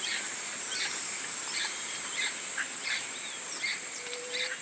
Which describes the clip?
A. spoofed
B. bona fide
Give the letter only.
A